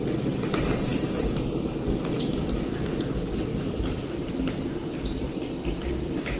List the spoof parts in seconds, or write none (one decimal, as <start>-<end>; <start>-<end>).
3.5-4.3